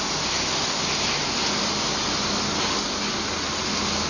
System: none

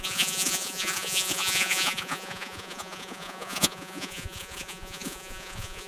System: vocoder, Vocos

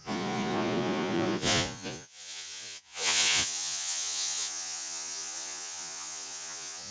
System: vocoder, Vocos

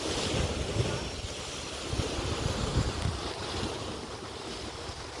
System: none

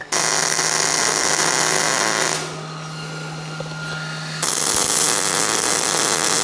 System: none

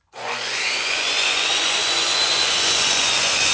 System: vocoder, Vocos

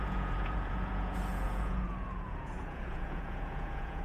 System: vocoder, Vocos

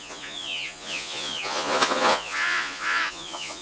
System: vocoder, Vocos